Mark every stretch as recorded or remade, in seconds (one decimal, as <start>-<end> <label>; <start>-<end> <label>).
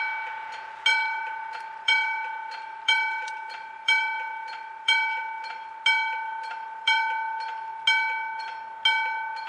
0.0-0.9 recorded; 0.9-5.2 remade; 5.2-6.3 recorded; 6.3-7.0 remade; 7.0-9.5 recorded